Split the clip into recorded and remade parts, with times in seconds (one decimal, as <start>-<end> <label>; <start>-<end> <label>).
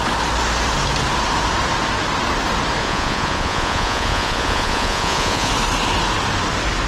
0.0-2.8 recorded; 2.8-5.5 remade; 5.5-6.9 recorded